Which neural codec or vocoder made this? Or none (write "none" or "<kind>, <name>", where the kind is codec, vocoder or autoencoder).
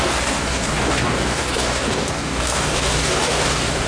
codec, DAC